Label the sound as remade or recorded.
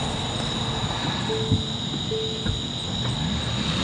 recorded